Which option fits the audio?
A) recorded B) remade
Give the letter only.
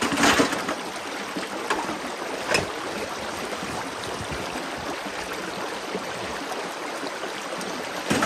A